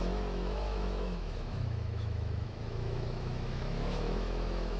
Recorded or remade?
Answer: remade